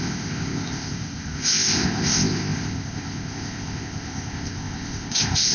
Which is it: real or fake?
fake